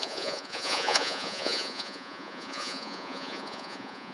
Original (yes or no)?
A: no